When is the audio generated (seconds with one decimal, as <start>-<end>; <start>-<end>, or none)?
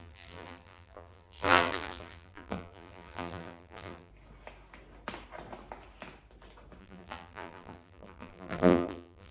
0.0-4.1; 6.8-9.3